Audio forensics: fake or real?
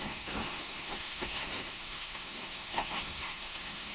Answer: fake